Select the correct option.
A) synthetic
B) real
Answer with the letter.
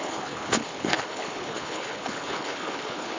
A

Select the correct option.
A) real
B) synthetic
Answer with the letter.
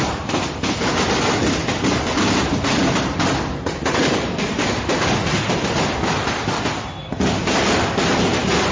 A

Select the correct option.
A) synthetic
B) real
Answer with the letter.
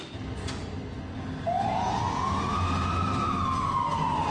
B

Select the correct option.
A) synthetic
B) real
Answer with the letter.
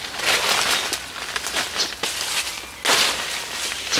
B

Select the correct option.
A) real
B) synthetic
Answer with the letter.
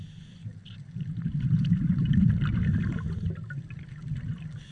A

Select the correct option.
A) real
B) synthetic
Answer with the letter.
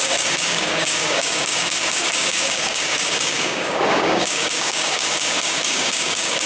B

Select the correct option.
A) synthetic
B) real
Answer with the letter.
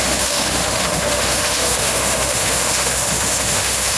A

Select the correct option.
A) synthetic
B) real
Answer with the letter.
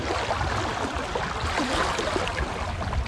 B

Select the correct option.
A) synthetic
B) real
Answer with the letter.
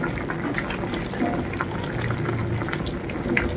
B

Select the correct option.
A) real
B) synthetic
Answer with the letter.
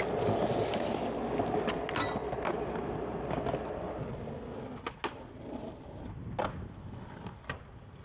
A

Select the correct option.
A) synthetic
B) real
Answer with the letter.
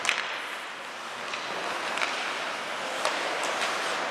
B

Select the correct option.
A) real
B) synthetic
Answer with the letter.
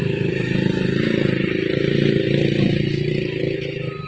B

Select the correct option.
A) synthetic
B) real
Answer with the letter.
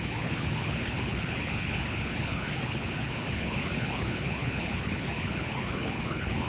A